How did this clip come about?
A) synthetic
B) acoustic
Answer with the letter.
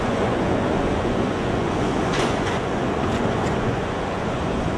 A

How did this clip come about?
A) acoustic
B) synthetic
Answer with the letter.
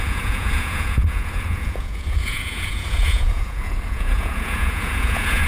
B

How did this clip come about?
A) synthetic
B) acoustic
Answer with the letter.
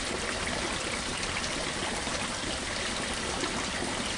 B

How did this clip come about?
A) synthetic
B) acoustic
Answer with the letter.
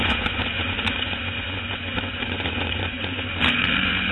A